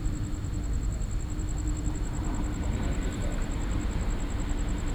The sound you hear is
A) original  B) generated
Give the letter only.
A